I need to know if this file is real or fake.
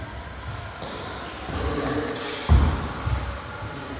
real